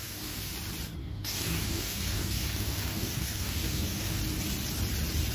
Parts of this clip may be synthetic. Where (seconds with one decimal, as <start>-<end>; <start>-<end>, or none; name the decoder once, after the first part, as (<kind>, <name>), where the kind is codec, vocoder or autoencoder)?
0.0-0.5 (codec, DAC); 1.0-4.2